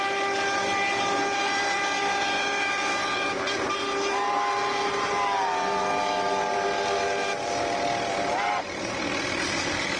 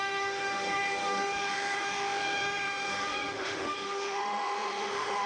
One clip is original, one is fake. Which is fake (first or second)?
second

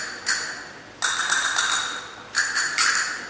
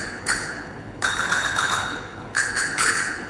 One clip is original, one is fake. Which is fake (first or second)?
second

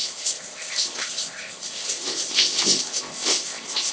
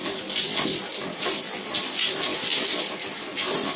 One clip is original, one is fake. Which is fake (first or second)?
first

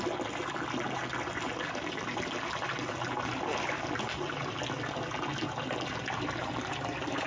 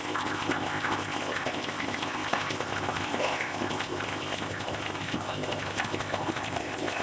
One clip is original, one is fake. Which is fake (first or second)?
second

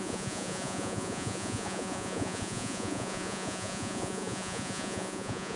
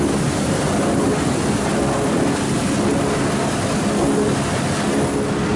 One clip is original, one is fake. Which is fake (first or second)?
first